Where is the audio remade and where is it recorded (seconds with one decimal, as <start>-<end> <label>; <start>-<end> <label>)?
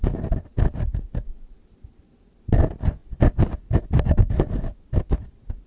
0.0-5.7 recorded